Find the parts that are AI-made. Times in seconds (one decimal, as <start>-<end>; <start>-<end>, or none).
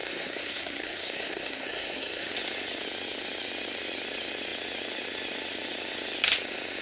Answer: 0.0-2.3